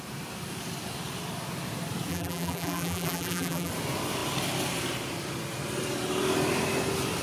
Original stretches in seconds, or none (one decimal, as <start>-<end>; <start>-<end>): 0.0-2.1; 3.7-7.2

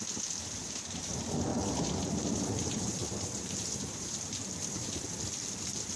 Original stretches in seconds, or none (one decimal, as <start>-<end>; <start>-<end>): 0.0-0.6; 1.1-1.5; 5.0-6.0

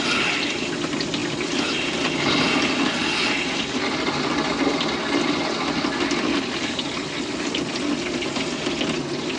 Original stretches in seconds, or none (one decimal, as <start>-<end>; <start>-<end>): 0.0-9.4

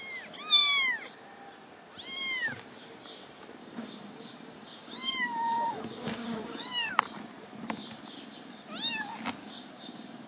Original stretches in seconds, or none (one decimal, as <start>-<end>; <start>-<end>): 0.0-3.6; 6.9-9.4

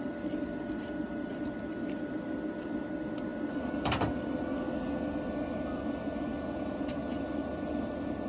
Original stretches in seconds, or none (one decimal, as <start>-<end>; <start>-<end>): 0.0-8.3

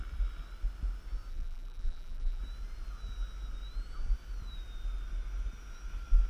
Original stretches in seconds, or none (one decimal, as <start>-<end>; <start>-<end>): 0.0-1.3; 2.4-6.3